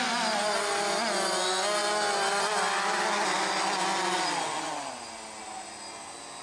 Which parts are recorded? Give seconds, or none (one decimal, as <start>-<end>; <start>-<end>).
0.0-6.4